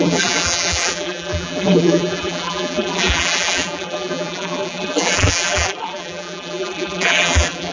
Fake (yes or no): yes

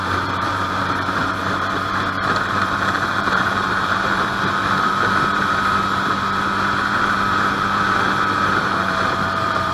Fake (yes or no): yes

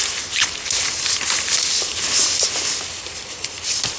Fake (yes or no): no